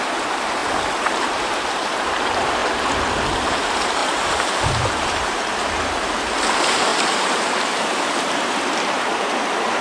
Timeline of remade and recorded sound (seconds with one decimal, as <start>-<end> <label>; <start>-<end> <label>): 0.0-2.6 remade; 2.6-3.3 recorded; 3.3-9.8 remade